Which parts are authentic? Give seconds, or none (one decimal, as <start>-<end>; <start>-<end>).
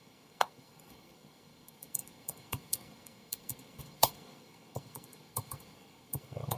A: none